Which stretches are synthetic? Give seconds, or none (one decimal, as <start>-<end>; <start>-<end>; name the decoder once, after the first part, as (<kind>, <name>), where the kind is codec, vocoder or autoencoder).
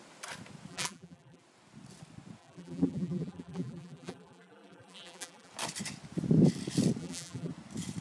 0.7-1.4 (vocoder, BigVGAN v2); 2.4-5.5; 7.0-7.5